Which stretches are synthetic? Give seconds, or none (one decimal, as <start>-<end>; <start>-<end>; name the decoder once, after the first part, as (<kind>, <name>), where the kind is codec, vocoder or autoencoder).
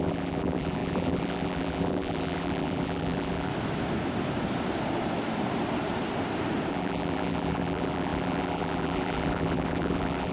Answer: 0.0-3.5 (vocoder, BigVGAN v2); 6.7-10.3